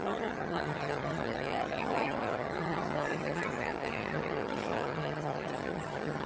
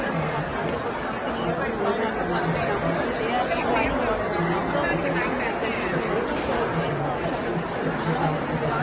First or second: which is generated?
first